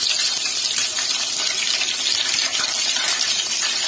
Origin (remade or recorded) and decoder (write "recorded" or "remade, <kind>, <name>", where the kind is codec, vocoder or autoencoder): recorded